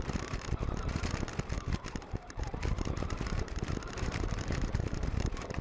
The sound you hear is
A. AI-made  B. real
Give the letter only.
A